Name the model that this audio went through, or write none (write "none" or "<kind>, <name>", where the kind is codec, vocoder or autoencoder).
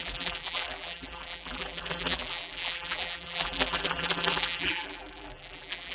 vocoder, BigVGAN v2